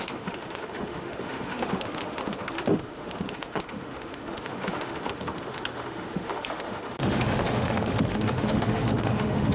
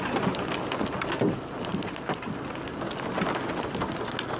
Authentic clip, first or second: second